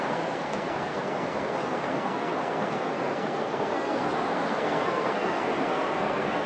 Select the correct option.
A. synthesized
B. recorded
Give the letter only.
A